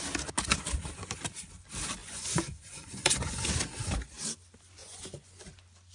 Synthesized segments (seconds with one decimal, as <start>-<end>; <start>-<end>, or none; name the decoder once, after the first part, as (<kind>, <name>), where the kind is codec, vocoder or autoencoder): 2.0-3.5 (vocoder, Vocos); 4.8-5.4